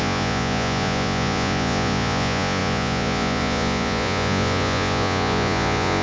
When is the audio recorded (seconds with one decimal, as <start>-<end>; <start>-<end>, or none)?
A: none